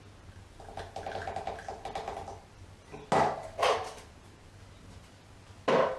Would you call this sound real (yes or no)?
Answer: yes